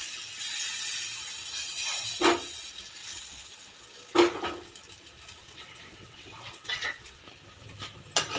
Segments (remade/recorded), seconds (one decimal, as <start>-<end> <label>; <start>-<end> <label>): 0.0-3.0 recorded; 3.0-3.5 remade; 3.5-5.4 recorded; 5.4-7.2 remade; 7.2-8.4 recorded